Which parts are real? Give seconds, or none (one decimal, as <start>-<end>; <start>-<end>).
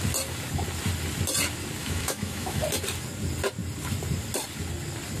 0.0-1.8; 2.6-5.2